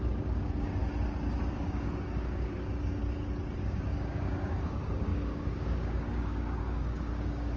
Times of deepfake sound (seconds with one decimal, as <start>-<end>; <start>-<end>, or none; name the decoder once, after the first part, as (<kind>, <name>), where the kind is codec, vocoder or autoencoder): 0.0-0.8 (codec, DAC); 1.5-3.0; 3.6-7.6